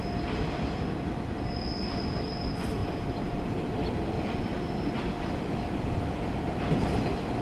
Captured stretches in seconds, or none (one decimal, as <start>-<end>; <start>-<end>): 0.0-7.4